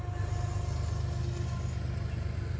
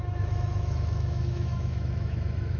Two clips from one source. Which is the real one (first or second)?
first